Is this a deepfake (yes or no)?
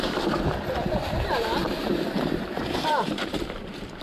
yes